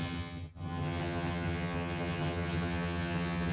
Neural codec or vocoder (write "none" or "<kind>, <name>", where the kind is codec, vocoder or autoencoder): vocoder, HiFi-GAN